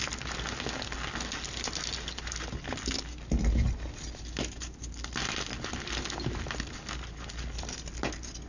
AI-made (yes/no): no